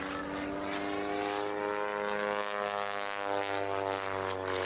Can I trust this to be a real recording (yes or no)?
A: yes